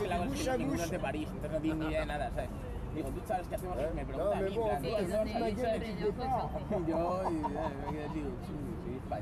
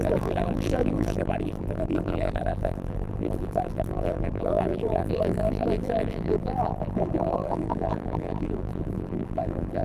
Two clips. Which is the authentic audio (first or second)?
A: first